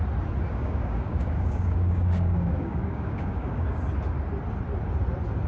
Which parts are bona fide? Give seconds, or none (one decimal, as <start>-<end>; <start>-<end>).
0.0-0.5; 3.8-5.5